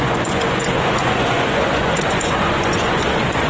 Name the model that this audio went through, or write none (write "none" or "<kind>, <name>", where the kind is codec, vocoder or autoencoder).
vocoder, Vocos